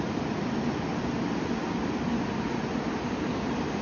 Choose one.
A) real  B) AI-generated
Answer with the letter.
A